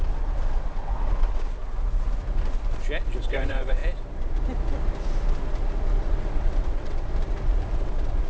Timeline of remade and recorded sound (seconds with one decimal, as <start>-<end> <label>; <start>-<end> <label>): 0.0-1.6 remade; 1.6-3.2 recorded; 3.2-3.8 remade; 3.8-6.0 recorded; 6.0-7.1 remade; 7.1-7.8 recorded; 7.8-8.3 remade